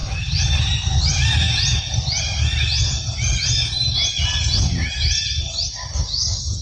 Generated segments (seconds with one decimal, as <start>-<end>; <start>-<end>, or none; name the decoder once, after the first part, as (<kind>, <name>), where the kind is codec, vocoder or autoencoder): 0.0-1.8 (vocoder, BigVGAN v2)